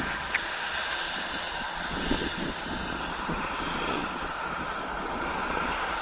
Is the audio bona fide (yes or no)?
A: no